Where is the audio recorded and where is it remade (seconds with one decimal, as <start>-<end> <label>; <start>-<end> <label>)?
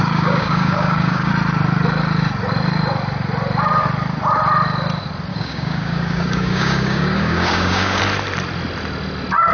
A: 0.0-1.3 remade; 1.3-5.3 recorded; 5.3-8.0 remade; 8.0-9.5 recorded